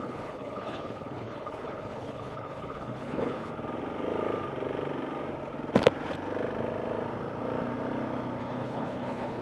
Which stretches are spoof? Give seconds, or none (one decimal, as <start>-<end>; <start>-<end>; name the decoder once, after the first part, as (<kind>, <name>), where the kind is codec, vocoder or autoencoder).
0.0-3.5 (codec, HILCodec); 8.4-9.4